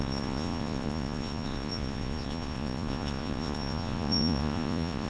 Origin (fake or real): fake